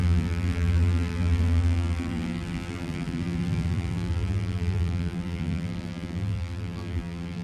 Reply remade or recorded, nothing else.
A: remade